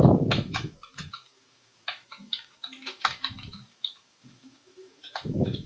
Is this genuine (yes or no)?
no